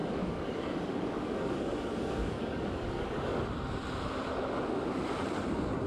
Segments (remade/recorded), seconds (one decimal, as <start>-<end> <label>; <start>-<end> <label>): 0.0-3.5 remade; 3.5-5.9 recorded